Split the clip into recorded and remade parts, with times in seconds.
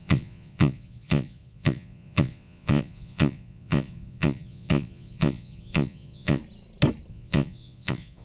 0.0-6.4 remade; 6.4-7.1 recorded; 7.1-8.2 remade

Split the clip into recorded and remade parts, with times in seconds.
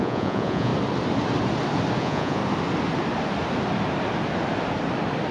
0.0-0.7 remade; 0.7-2.0 recorded; 2.0-2.4 remade; 2.4-5.3 recorded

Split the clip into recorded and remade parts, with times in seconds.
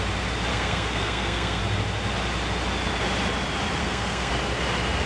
0.0-0.5 recorded; 0.5-1.6 remade; 1.6-3.8 recorded; 3.8-4.3 remade; 4.3-5.1 recorded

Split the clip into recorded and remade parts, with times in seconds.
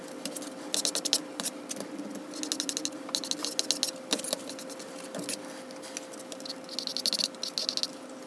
0.0-8.3 recorded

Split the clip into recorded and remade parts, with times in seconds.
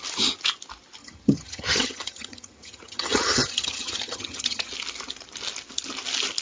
0.0-1.0 recorded; 1.0-4.7 remade; 4.7-6.4 recorded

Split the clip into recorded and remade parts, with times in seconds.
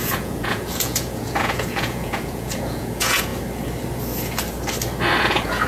0.0-3.3 remade; 3.3-5.2 recorded; 5.2-5.7 remade